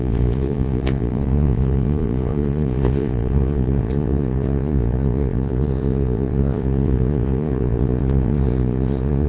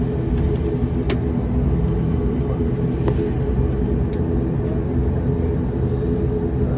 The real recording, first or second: second